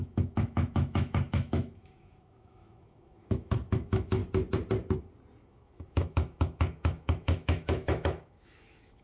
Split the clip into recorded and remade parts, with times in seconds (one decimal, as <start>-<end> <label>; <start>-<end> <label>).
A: 0.0-4.2 remade; 4.2-5.4 recorded; 5.4-9.0 remade